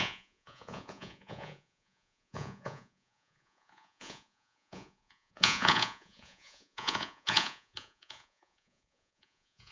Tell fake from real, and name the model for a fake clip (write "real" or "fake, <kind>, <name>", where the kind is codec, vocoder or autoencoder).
fake, vocoder, Vocos